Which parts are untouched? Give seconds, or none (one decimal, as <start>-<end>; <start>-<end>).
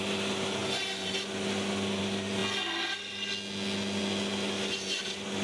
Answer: 0.0-5.4